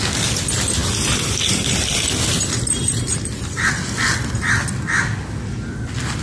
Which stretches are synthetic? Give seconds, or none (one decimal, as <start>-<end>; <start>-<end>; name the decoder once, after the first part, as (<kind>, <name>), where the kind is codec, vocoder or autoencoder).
0.8-3.7 (vocoder, BigVGAN v2)